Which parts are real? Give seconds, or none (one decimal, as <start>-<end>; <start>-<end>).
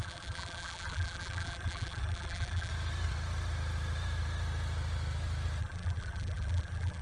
2.7-5.6